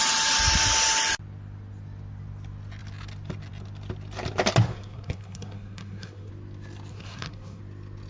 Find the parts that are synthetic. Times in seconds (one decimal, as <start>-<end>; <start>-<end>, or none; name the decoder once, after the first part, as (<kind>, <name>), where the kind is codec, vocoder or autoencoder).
4.7-6.3 (codec, SNAC); 6.9-7.6